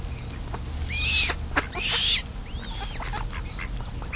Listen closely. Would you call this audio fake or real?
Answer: real